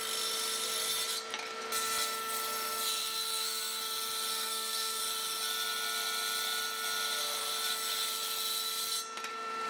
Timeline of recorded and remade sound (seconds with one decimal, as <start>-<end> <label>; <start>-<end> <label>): 0.0-3.0 recorded; 3.0-3.8 remade; 3.8-4.3 recorded; 4.3-5.0 remade; 5.0-9.7 recorded